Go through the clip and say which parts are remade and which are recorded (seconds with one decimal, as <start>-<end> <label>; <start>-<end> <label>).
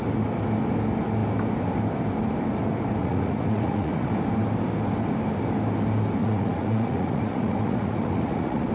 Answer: 0.0-3.0 recorded; 3.0-4.1 remade; 4.1-6.2 recorded; 6.2-8.7 remade